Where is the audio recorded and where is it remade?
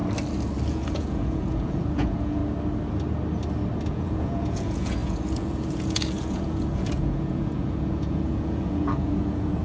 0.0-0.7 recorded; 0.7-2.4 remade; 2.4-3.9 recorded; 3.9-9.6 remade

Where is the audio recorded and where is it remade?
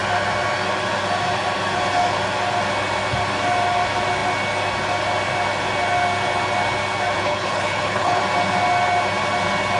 0.0-7.2 recorded; 7.2-8.2 remade; 8.2-9.8 recorded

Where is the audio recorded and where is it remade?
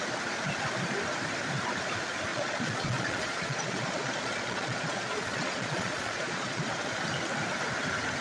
0.0-2.3 recorded; 2.3-6.8 remade; 6.8-8.2 recorded